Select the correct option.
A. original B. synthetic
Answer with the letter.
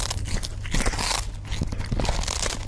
A